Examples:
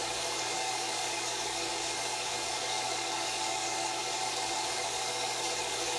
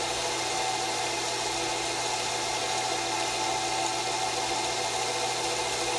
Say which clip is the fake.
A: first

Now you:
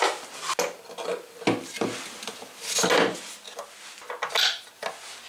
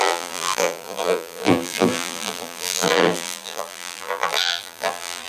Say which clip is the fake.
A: second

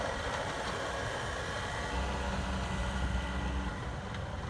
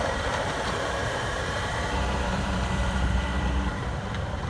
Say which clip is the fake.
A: second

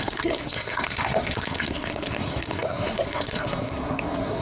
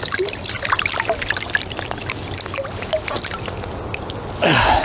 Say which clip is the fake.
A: first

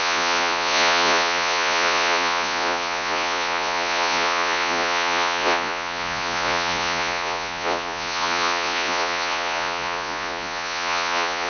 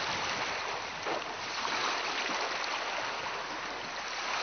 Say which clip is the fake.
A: first